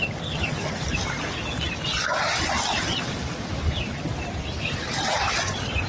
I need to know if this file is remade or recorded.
remade